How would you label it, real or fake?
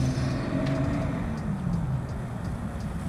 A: real